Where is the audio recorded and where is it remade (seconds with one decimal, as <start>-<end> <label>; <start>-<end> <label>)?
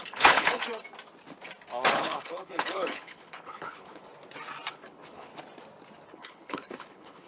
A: 0.0-0.6 remade; 0.6-1.9 recorded; 1.9-4.1 remade; 4.1-4.7 recorded; 4.7-5.3 remade; 5.3-6.1 recorded; 6.1-7.3 remade